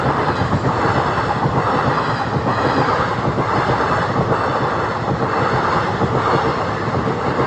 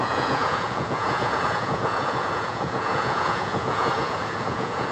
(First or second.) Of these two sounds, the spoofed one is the second